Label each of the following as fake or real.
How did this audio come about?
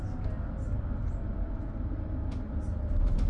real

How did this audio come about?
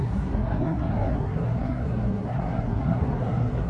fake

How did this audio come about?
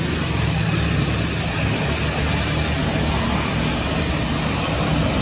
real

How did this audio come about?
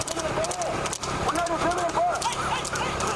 real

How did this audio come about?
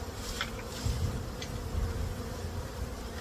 real